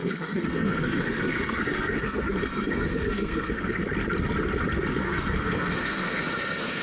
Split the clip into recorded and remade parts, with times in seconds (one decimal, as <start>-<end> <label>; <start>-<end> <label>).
0.0-3.8 remade; 3.8-5.0 recorded; 5.0-6.8 remade